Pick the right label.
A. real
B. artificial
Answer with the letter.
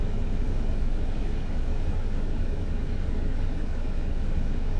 B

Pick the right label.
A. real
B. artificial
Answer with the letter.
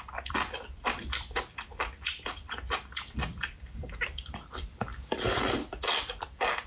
B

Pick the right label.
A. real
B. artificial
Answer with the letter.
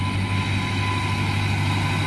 A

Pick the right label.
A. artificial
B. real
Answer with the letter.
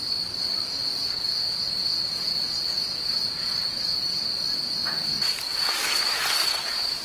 B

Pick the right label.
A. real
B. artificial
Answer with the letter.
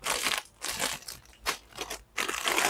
A